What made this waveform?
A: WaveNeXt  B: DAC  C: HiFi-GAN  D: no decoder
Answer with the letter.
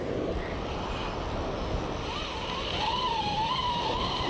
D